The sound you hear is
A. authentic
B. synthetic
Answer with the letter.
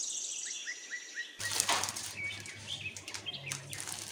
A